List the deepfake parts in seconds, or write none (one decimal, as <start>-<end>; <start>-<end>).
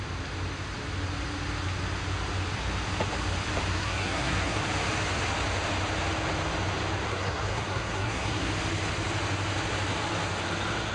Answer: 3.7-4.6; 7.1-8.5